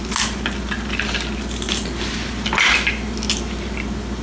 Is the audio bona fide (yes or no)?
yes